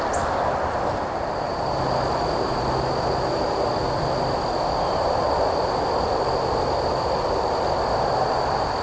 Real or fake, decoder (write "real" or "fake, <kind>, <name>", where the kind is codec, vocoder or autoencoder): real